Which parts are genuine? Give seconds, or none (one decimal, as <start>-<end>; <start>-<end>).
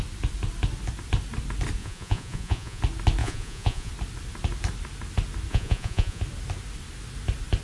0.0-1.8; 2.8-3.2; 3.9-5.5; 6.2-7.6